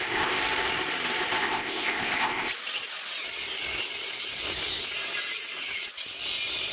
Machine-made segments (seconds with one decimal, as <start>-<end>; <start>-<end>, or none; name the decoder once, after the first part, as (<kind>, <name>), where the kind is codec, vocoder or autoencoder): 0.0-0.4 (codec, ZipCodec); 1.4-2.5